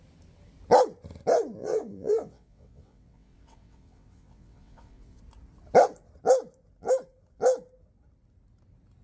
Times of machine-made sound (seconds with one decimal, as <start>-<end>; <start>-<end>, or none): 1.6-5.2